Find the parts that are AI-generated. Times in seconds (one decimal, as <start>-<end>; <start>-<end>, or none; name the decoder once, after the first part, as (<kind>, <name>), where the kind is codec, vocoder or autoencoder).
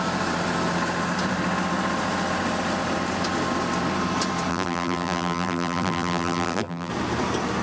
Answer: 4.5-6.9 (vocoder, BigVGAN v2)